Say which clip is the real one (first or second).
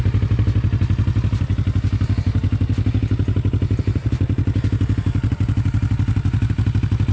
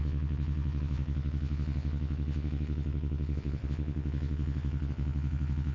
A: first